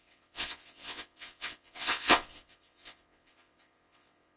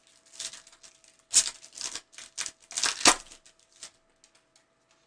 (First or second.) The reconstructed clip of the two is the first